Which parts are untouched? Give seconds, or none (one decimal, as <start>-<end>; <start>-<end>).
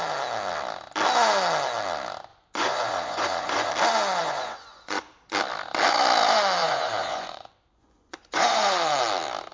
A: 0.0-2.3; 3.7-4.2; 5.1-6.6; 9.0-9.5